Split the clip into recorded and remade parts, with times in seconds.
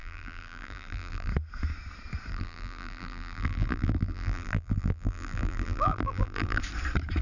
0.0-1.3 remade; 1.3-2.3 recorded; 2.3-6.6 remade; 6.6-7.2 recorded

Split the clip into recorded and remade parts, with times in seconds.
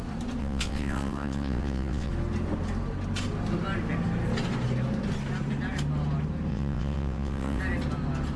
0.0-0.4 recorded; 0.4-2.1 remade; 2.1-6.5 recorded; 6.5-7.6 remade; 7.6-8.4 recorded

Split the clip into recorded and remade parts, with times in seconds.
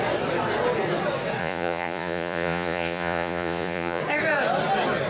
0.0-1.4 recorded; 1.4-4.0 remade; 4.0-5.1 recorded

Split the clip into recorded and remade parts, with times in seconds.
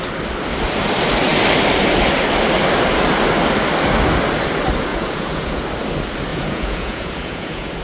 0.0-4.9 recorded; 4.9-5.6 remade; 5.6-6.3 recorded; 6.3-7.8 remade